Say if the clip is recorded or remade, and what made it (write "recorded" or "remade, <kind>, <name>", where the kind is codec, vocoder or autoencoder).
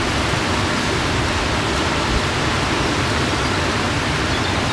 recorded